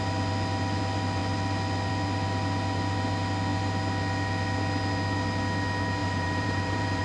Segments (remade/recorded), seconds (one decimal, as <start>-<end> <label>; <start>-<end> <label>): 0.0-6.0 recorded; 6.0-7.0 remade